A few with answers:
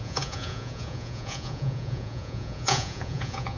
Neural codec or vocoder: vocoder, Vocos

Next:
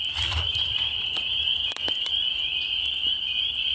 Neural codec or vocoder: vocoder, BigVGAN v2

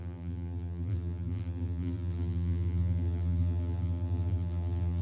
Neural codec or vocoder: vocoder, BigVGAN v2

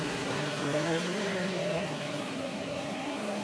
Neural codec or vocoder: codec, SNAC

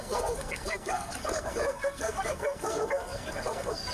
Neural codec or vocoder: codec, SNAC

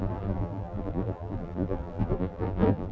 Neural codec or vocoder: vocoder, BigVGAN v2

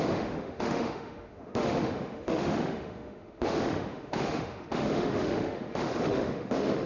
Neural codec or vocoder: autoencoder, DAC-VAE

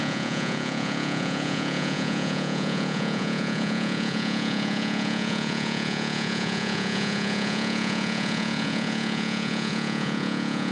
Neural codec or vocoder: vocoder, Vocos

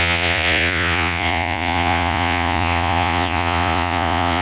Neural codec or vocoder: vocoder, Vocos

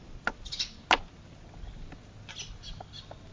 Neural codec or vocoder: none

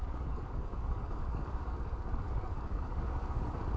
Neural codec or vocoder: codec, DAC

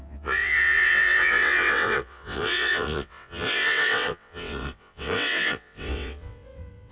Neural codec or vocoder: vocoder, WaveNeXt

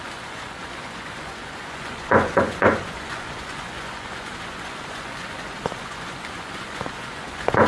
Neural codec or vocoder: vocoder, Vocos